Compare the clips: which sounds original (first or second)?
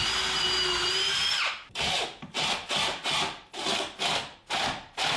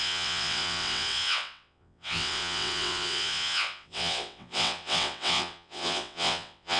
first